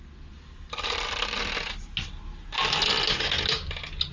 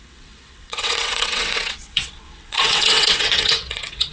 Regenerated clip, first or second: second